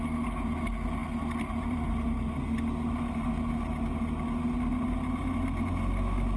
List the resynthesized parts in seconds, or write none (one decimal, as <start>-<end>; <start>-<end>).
1.0-2.3